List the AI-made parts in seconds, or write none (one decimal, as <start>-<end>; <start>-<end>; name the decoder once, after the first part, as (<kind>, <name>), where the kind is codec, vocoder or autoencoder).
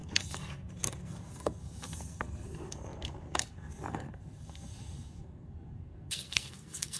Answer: 0.0-7.0 (codec, SNAC)